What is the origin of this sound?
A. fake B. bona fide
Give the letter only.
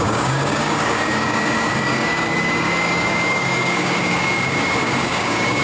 A